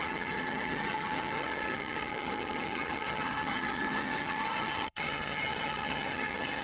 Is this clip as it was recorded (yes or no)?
no